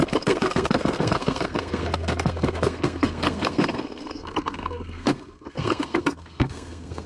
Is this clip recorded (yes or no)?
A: no